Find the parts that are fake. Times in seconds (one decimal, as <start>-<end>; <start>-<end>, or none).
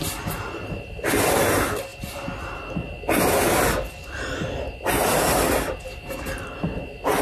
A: none